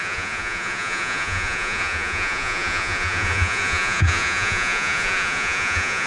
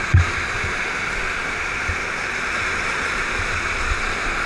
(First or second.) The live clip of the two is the second